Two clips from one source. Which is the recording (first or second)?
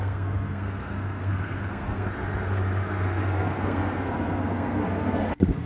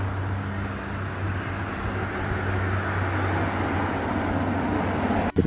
second